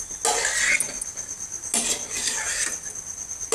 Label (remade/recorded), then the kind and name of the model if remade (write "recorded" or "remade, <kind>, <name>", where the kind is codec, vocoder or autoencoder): recorded